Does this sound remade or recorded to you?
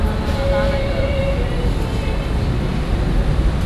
recorded